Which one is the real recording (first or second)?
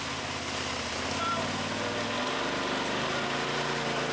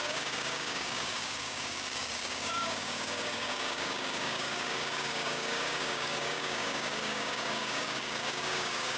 first